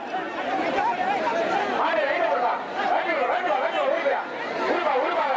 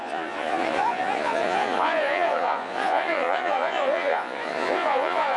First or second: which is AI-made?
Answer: second